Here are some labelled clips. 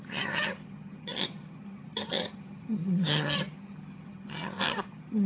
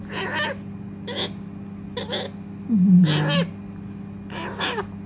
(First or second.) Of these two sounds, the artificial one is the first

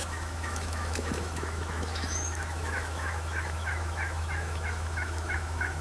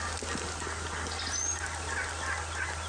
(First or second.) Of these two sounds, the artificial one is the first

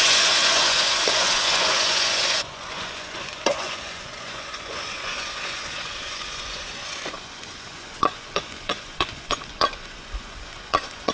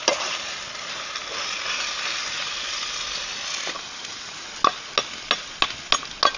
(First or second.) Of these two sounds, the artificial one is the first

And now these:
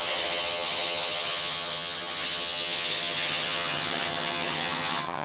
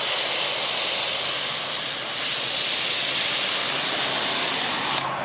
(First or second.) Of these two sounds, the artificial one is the first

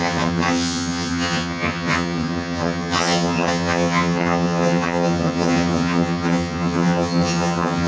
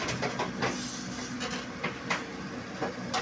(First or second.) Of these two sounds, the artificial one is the first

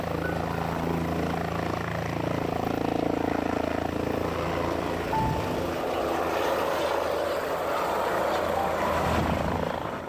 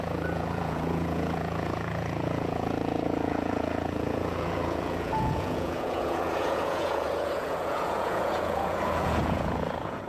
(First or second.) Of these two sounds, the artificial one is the second